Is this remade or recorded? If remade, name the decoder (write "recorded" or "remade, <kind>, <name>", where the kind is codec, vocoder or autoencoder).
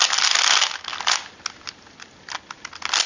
recorded